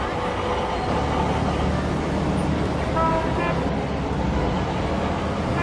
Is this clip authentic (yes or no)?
yes